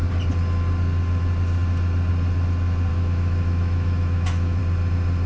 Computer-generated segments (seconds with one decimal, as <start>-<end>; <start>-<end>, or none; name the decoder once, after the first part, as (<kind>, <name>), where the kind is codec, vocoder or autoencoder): 2.9-4.6 (autoencoder, DAC-VAE)